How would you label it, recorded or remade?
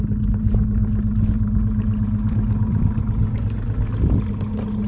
recorded